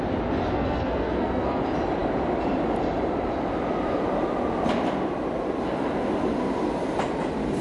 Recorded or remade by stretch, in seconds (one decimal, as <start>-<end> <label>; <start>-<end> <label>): 0.0-0.5 recorded; 0.5-1.6 remade; 1.6-7.6 recorded